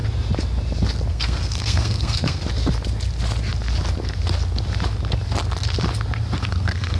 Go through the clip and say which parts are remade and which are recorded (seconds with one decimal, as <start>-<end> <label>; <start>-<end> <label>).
0.0-1.1 recorded; 1.1-2.4 remade; 2.4-6.4 recorded; 6.4-7.0 remade

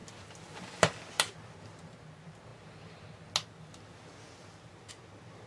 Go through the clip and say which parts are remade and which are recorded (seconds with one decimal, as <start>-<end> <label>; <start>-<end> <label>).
0.0-5.5 recorded

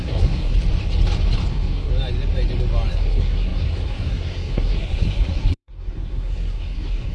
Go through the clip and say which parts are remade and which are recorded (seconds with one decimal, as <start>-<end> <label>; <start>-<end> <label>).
0.0-0.5 remade; 0.5-1.5 recorded; 1.5-1.9 remade; 1.9-2.9 recorded; 2.9-7.1 remade